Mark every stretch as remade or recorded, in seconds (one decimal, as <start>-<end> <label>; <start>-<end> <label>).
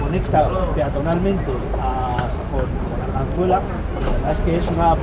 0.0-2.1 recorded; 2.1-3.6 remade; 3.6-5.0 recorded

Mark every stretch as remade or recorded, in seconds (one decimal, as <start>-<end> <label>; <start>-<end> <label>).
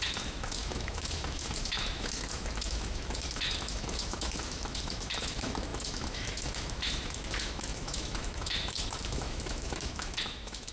0.0-10.7 remade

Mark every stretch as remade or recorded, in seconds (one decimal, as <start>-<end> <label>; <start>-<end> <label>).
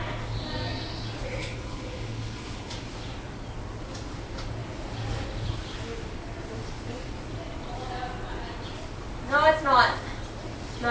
0.0-1.4 recorded; 1.4-2.7 remade; 2.7-10.9 recorded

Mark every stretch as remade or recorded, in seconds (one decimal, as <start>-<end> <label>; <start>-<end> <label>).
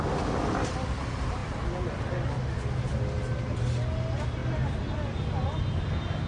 0.0-6.3 recorded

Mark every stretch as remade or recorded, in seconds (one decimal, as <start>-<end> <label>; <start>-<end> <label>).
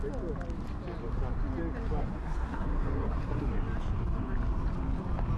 0.0-2.0 recorded; 2.0-3.4 remade; 3.4-5.4 recorded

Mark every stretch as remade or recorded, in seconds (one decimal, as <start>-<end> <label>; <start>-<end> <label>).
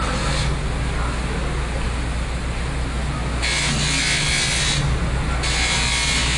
0.0-6.4 recorded